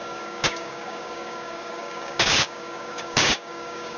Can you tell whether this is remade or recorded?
remade